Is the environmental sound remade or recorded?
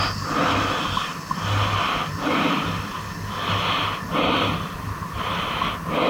recorded